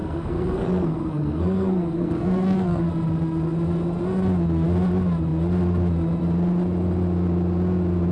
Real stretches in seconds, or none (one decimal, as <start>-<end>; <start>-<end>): 2.9-8.1